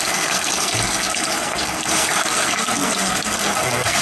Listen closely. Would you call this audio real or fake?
fake